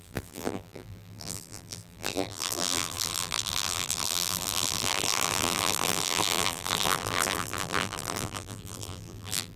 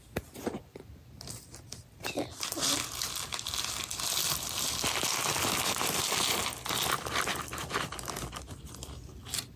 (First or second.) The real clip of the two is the second